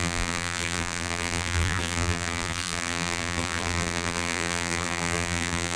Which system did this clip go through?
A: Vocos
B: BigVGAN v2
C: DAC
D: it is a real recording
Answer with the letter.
B